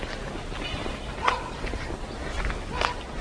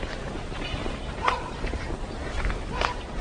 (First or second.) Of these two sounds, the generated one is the second